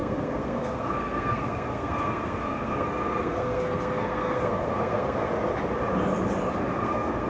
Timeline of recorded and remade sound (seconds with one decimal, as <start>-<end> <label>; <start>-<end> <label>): 0.0-5.3 remade; 5.3-6.8 recorded; 6.8-7.3 remade